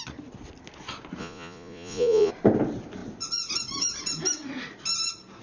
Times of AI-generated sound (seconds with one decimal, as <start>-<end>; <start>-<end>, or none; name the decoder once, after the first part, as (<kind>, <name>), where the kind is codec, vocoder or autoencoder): 1.2-2.3 (vocoder, Vocos)